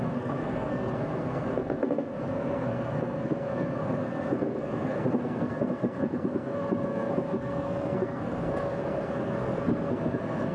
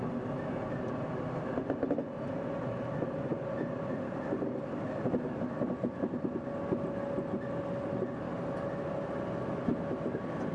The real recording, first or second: second